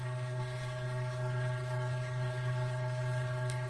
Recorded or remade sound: remade